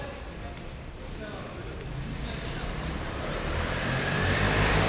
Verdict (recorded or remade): remade